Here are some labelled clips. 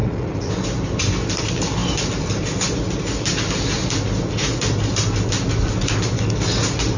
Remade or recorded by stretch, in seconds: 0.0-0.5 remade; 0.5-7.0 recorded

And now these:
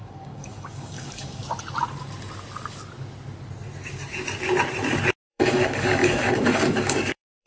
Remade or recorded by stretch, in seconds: 0.0-1.4 remade; 1.4-5.3 recorded; 5.3-7.5 remade

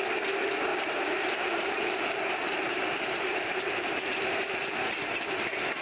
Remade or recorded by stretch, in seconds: 0.0-0.7 recorded; 0.7-4.2 remade; 4.2-5.8 recorded

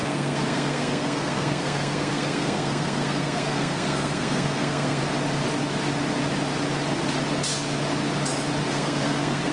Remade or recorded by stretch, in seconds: 0.0-5.0 remade; 5.0-8.7 recorded; 8.7-9.5 remade

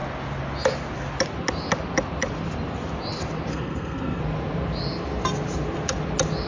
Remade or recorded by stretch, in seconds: 0.0-3.5 recorded; 3.5-4.2 remade; 4.2-6.5 recorded